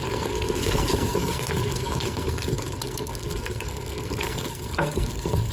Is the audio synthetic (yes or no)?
yes